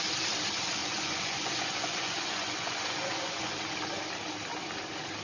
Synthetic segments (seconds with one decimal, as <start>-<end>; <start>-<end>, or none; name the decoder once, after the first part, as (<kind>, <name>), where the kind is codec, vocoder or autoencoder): 0.8-3.5 (vocoder, Vocos)